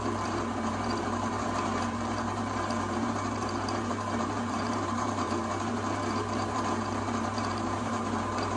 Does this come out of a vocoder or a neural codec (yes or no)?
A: yes